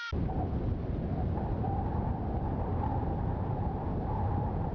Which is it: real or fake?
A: real